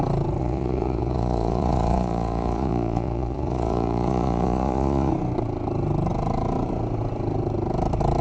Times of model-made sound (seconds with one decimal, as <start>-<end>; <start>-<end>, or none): 0.4-5.1